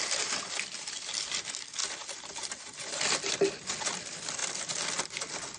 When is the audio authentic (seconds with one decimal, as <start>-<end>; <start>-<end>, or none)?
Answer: 0.0-5.6